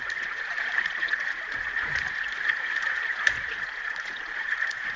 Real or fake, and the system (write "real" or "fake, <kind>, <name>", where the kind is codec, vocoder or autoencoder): fake, vocoder, Vocos